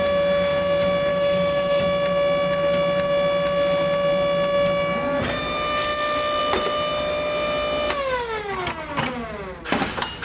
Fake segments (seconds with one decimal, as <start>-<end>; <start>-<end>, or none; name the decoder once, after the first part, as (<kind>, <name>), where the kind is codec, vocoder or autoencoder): 1.1-1.8 (autoencoder, DAC-VAE)